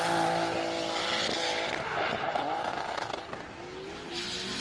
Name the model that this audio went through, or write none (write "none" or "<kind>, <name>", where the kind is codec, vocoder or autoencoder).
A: none